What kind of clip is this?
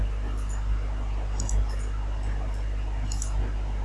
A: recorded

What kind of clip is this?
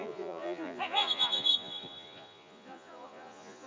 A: remade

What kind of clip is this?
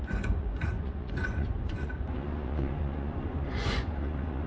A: remade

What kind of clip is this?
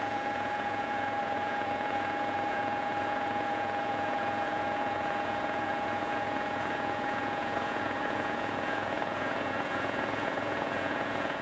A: remade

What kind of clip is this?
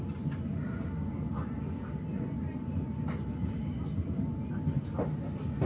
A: recorded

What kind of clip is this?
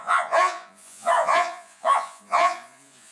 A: remade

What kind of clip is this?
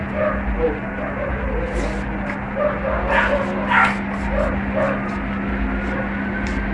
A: recorded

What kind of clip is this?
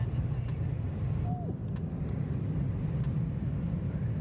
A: recorded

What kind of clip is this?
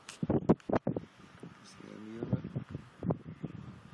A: recorded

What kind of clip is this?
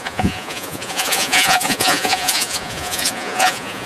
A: remade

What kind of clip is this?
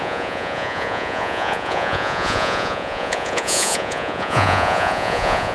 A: remade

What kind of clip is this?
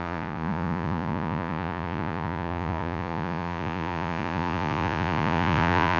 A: remade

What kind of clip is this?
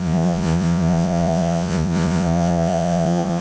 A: remade